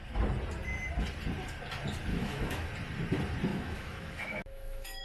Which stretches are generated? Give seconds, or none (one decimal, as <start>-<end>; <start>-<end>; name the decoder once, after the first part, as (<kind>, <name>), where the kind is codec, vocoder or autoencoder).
2.1-2.7 (autoencoder, DAC-VAE); 3.5-5.0